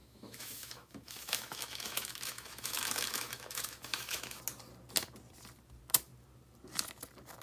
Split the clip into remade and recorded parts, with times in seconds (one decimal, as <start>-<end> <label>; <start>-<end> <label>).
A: 0.0-4.4 remade; 4.4-7.4 recorded